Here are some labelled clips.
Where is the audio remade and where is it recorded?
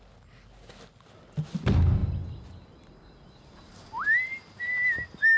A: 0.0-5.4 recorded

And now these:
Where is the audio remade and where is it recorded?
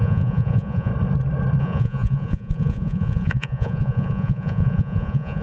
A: 0.0-0.9 remade; 0.9-1.6 recorded; 1.6-5.4 remade